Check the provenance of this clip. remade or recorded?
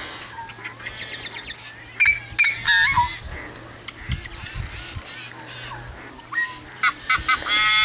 recorded